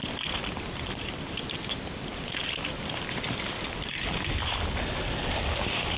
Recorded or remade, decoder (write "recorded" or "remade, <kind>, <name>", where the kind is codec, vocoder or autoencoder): recorded